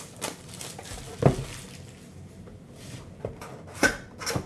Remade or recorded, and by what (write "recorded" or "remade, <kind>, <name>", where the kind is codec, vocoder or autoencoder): recorded